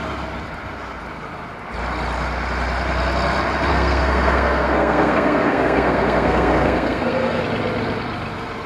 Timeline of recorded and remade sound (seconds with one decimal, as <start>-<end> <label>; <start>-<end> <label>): 0.0-3.7 recorded; 3.7-7.4 remade; 7.4-8.7 recorded